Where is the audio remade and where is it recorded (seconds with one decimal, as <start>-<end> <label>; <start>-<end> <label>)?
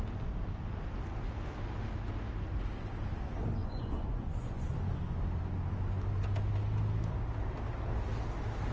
0.0-3.6 recorded; 3.6-5.2 remade; 5.2-8.7 recorded